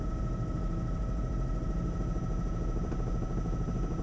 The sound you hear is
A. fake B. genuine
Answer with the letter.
B